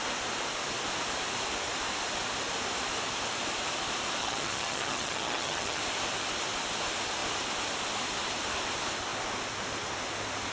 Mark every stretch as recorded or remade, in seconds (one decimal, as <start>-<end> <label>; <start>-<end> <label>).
0.0-4.2 recorded; 4.2-5.8 remade; 5.8-10.5 recorded

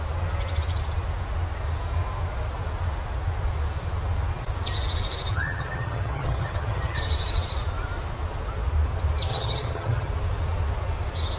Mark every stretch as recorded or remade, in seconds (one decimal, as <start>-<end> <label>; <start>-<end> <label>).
0.0-5.3 recorded; 5.3-7.0 remade; 7.0-9.3 recorded; 9.3-10.1 remade; 10.1-11.4 recorded

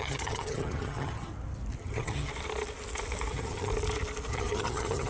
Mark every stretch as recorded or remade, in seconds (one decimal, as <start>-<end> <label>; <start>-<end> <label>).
0.0-1.3 remade; 1.3-1.8 recorded; 1.8-2.3 remade; 2.3-3.3 recorded; 3.3-3.7 remade; 3.7-4.3 recorded; 4.3-5.1 remade

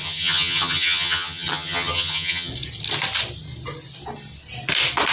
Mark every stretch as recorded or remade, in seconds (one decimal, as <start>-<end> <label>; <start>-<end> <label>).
0.0-2.5 remade; 2.5-5.1 recorded

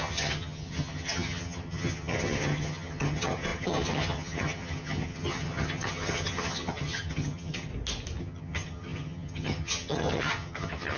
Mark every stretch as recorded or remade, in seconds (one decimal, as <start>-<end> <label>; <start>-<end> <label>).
0.0-7.7 remade; 7.7-8.2 recorded; 8.2-11.0 remade

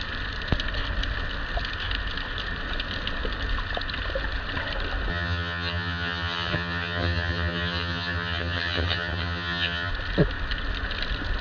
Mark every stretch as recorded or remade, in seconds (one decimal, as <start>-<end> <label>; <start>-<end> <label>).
0.0-5.1 recorded; 5.1-9.9 remade; 9.9-11.4 recorded

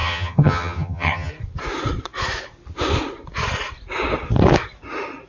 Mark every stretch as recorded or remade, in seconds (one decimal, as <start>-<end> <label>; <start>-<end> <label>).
0.0-1.3 remade; 1.3-5.3 recorded